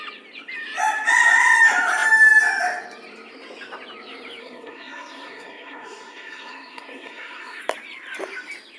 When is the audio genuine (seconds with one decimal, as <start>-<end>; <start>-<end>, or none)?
0.0-4.4; 7.6-8.8